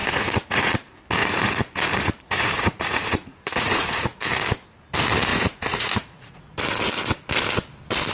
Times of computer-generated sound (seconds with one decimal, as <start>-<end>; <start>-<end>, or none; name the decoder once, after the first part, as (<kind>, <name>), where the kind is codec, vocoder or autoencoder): 0.0-0.7 (vocoder, Vocos); 1.2-4.2; 5.3-6.6